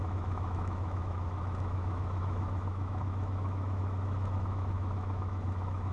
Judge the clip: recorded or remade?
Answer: remade